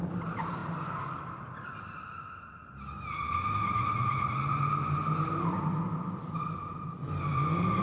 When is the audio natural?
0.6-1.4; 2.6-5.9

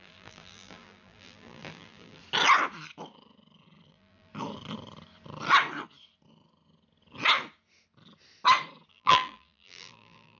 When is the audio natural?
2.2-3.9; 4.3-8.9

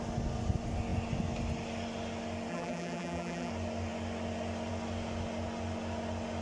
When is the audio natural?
0.0-2.5; 3.5-6.4

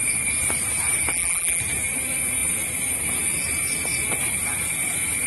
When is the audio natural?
0.0-1.1; 1.6-5.3